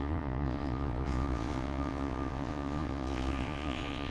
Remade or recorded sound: remade